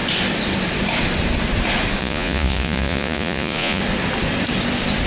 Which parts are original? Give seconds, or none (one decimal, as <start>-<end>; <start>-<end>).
0.0-2.0; 3.8-5.1